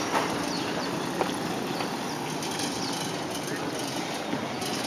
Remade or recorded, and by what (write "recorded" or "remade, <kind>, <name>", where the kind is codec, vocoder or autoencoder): recorded